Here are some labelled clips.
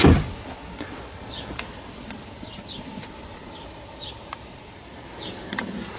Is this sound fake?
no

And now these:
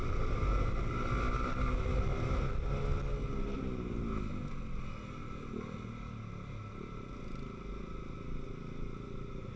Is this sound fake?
no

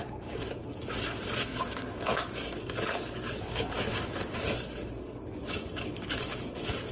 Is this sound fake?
yes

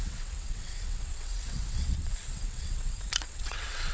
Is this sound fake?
yes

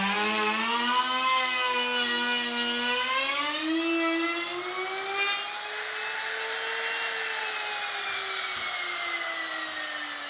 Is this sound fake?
no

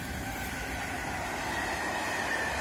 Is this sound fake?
no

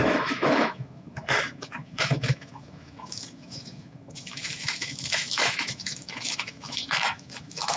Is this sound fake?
yes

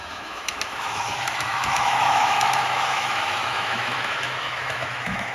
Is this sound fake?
yes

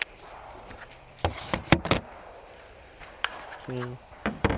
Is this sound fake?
yes